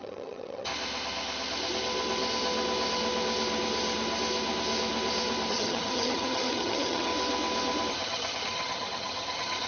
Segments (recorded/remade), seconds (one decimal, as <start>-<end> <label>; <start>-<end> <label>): 0.0-0.7 remade; 0.7-5.5 recorded; 5.5-7.1 remade; 7.1-7.9 recorded; 7.9-9.7 remade